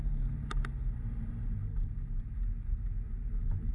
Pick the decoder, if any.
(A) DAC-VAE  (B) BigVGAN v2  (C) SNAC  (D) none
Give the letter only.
B